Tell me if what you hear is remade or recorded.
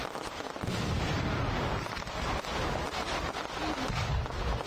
recorded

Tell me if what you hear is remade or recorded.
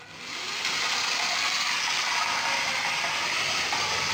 recorded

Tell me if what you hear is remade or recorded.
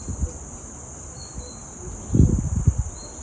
recorded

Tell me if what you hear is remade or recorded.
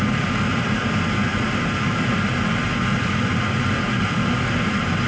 recorded